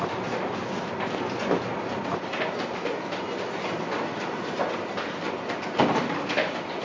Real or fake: real